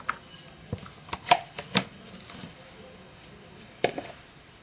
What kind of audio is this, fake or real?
real